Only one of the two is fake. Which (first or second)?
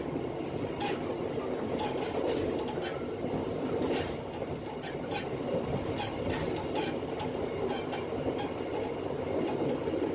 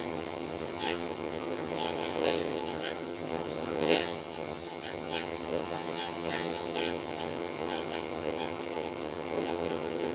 second